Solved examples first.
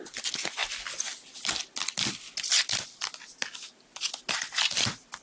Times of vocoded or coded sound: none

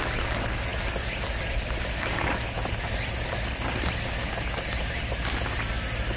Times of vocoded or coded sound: none

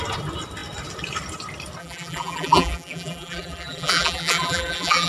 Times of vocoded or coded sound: 1.8-5.1

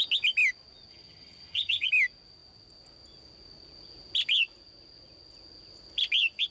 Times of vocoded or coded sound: 0.9-1.9